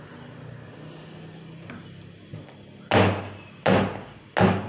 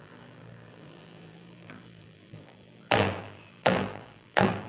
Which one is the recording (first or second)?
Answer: first